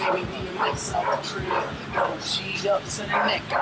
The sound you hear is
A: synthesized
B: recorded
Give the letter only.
B